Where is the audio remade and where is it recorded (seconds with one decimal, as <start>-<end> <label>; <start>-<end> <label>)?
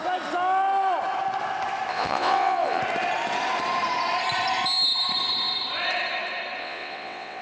0.0-1.9 recorded; 1.9-2.8 remade; 2.8-6.6 recorded; 6.6-7.4 remade